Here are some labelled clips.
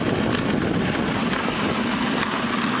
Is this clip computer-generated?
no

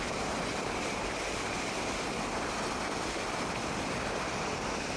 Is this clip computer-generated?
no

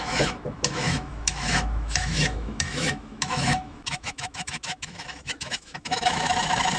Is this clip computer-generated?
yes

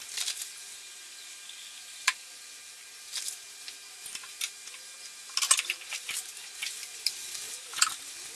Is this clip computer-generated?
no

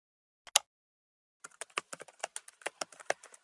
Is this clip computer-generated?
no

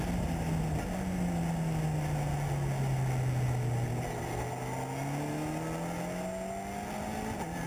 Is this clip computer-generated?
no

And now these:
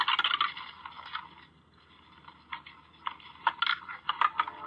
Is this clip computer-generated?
no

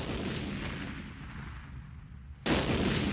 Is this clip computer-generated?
no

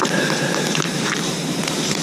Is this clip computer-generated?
yes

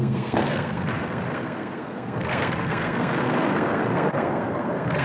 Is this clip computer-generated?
yes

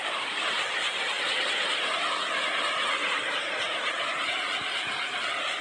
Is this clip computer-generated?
yes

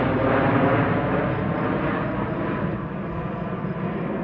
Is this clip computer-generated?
no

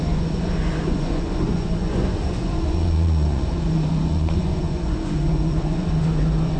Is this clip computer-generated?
yes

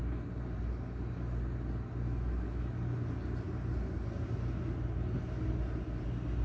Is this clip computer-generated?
no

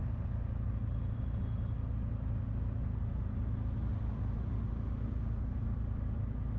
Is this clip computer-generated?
no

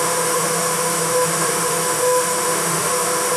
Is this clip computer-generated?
yes